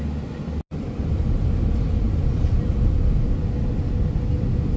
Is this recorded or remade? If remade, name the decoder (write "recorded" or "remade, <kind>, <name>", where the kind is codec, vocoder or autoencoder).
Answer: recorded